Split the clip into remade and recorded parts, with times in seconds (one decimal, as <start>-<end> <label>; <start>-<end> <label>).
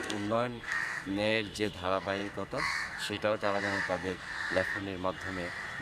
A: 0.0-4.8 remade; 4.8-5.8 recorded